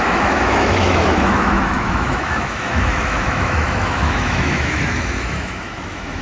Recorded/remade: remade